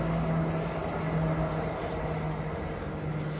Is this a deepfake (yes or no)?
no